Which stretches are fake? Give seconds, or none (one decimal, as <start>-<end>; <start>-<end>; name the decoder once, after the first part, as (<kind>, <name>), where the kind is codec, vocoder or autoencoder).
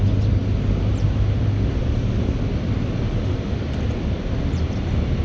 none